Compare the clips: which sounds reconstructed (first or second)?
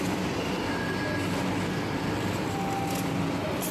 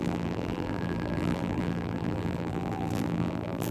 second